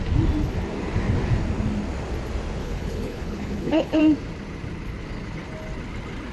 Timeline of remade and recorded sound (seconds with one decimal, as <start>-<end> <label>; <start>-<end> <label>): 0.0-2.6 recorded; 2.6-4.0 remade; 4.0-6.3 recorded